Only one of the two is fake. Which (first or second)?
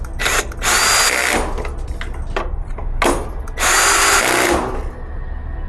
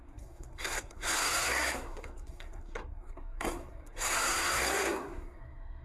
second